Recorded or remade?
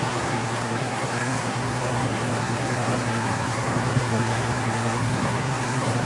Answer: remade